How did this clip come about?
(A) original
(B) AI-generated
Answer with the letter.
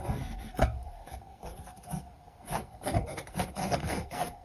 B